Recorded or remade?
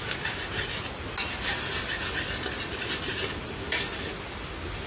recorded